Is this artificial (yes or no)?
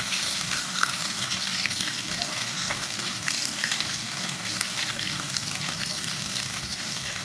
yes